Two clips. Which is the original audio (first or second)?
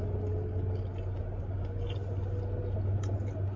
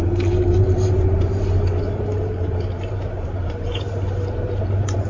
first